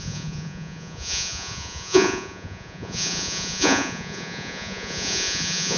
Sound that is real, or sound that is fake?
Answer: fake